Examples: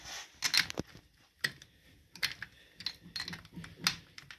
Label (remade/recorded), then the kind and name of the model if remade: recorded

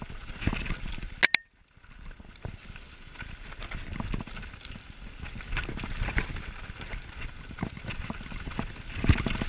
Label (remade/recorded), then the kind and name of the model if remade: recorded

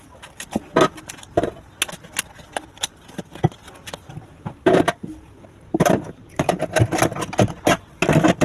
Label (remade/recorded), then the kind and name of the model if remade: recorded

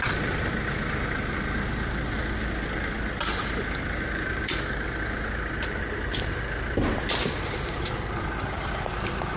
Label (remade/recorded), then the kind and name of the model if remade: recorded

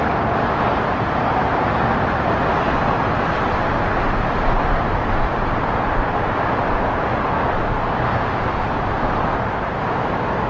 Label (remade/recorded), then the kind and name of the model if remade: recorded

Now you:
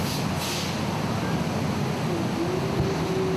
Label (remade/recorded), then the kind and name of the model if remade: recorded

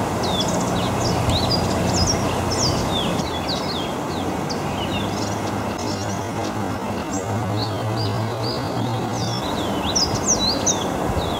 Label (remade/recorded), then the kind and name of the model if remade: recorded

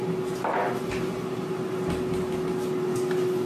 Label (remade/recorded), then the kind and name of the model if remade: recorded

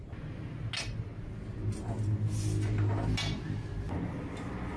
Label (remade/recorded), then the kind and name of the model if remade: recorded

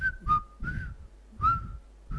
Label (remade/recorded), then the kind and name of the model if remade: recorded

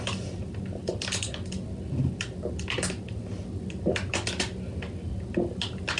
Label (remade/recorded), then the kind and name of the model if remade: recorded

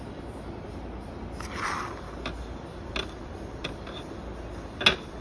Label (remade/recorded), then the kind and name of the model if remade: recorded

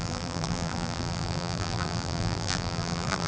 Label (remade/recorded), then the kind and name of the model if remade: remade, vocoder, BigVGAN v2